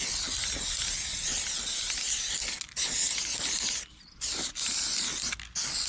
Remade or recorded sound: recorded